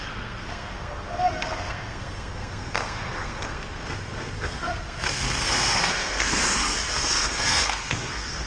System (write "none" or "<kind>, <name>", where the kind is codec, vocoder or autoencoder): codec, SNAC